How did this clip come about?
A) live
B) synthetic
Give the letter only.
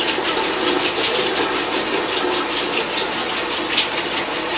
A